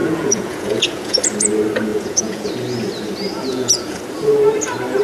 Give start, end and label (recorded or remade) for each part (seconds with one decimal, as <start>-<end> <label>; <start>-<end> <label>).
0.0-1.2 remade; 1.2-1.9 recorded; 1.9-2.5 remade; 2.5-3.5 recorded; 3.5-4.0 remade; 4.0-5.0 recorded